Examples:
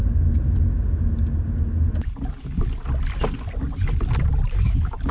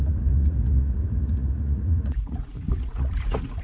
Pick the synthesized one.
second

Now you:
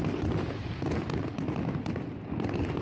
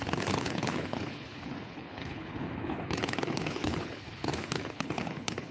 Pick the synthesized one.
second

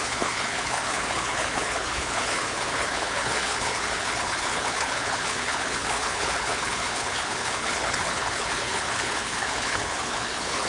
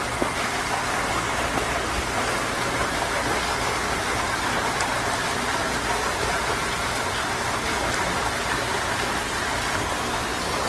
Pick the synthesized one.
first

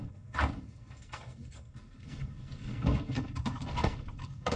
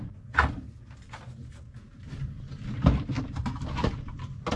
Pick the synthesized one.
first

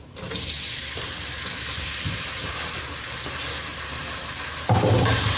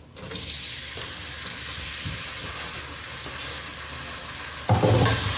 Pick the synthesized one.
first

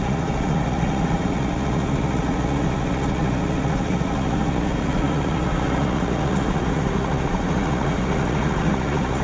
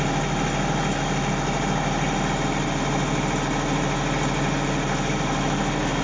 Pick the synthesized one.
first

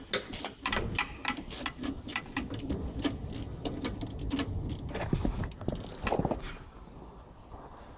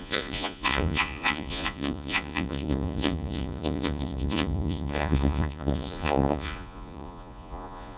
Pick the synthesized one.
second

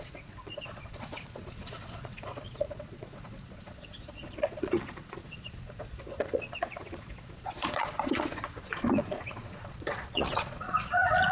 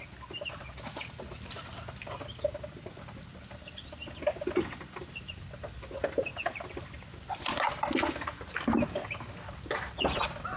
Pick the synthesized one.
first